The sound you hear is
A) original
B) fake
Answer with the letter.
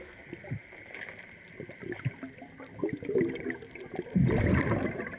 A